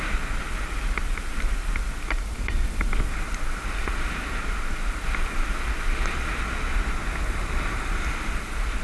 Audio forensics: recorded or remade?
recorded